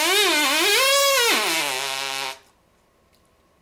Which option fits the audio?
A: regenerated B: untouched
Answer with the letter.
B